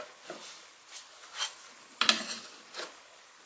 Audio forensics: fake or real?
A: real